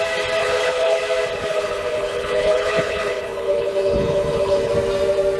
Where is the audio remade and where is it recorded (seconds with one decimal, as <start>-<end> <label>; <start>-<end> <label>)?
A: 0.0-0.4 recorded; 0.4-1.0 remade; 1.0-1.5 recorded; 1.5-4.7 remade; 4.7-5.4 recorded